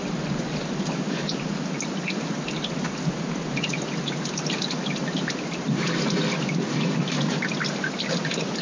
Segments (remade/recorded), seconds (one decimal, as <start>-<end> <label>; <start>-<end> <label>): 0.0-8.6 recorded